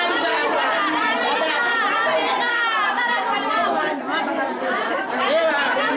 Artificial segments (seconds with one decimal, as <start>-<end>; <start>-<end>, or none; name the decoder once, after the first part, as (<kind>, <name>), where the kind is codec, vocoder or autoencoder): 1.0-4.6 (vocoder, BigVGAN v2)